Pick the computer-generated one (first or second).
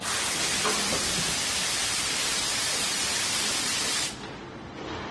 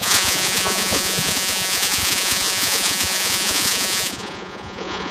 second